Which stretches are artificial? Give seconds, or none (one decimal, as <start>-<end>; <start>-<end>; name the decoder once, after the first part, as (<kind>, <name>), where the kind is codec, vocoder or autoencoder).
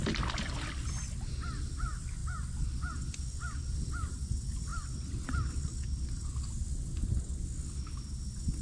none